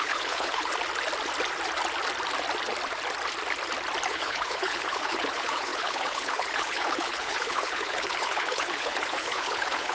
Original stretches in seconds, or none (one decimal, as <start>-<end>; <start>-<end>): 0.7-4.1